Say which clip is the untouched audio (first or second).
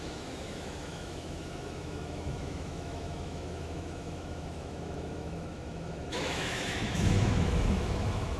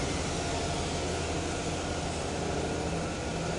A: second